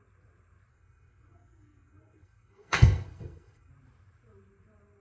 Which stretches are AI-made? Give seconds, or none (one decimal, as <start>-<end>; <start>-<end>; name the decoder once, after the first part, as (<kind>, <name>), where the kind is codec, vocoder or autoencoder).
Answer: 0.7-3.7 (codec, SNAC)